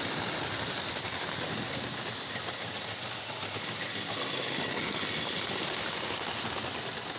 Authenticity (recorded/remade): recorded